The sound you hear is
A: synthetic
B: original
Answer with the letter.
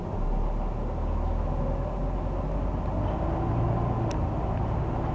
B